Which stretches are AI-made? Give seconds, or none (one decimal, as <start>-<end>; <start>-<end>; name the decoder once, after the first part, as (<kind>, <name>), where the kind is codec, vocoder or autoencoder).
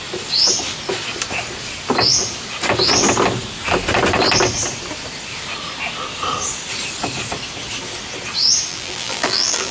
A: 8.7-9.7 (vocoder, BigVGAN v2)